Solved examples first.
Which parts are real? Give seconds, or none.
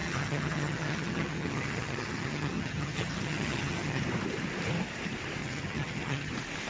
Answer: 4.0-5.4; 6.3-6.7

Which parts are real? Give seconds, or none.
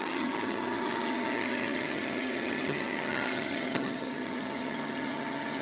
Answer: none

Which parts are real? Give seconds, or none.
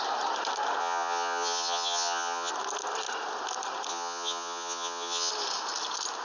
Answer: 0.0-0.8; 2.5-3.9; 5.3-6.2